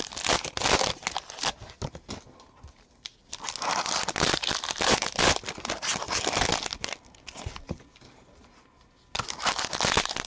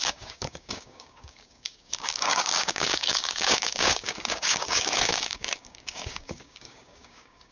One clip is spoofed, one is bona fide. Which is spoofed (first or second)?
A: second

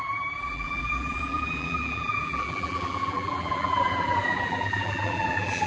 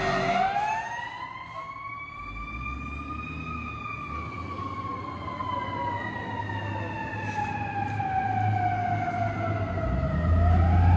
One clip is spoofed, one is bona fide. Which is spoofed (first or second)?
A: first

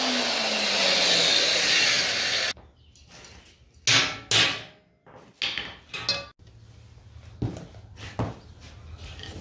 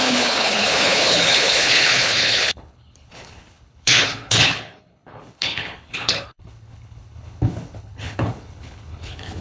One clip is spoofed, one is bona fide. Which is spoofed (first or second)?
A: second